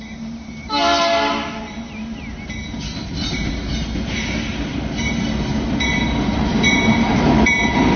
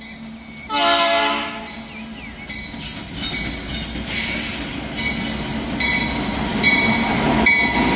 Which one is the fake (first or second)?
first